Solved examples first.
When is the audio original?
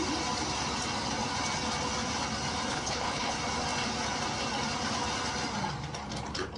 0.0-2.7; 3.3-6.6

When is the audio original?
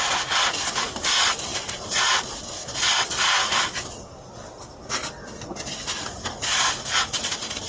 0.0-7.7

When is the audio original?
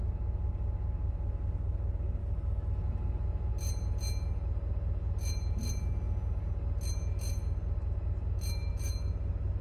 0.0-2.2; 2.8-9.6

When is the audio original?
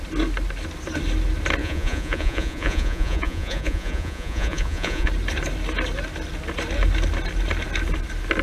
0.0-1.6; 5.1-8.4